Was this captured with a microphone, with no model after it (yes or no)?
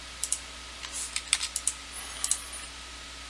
yes